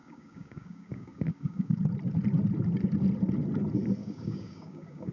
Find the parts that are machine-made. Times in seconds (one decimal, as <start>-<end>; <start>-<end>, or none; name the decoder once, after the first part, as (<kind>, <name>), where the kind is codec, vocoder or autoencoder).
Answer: 0.0-1.8 (codec, DAC); 4.0-5.1